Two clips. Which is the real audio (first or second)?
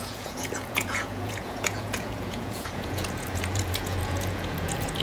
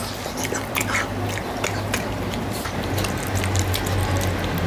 second